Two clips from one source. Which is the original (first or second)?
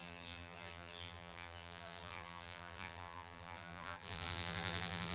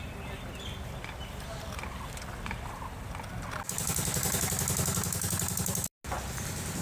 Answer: second